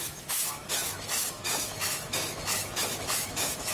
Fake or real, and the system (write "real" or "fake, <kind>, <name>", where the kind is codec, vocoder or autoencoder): fake, autoencoder, DAC-VAE